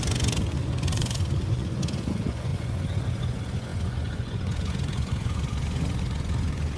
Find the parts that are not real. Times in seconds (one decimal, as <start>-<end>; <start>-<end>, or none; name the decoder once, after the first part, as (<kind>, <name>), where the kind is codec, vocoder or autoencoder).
0.0-6.8 (vocoder, Vocos)